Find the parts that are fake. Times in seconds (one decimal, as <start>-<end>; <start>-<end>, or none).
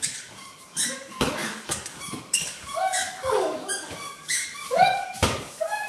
0.0-5.9